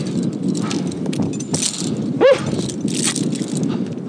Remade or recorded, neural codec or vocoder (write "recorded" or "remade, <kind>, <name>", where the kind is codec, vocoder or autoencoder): recorded